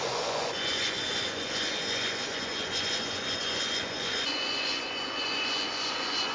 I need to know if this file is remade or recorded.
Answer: remade